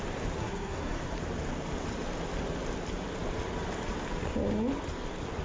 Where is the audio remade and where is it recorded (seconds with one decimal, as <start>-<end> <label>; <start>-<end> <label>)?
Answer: 0.0-0.4 recorded; 0.4-1.0 remade; 1.0-5.4 recorded